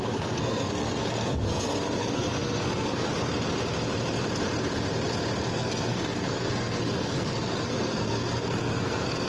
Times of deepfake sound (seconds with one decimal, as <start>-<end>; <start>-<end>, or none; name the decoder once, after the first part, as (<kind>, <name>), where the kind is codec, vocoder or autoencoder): 0.0-3.1 (codec, SNAC); 5.5-9.3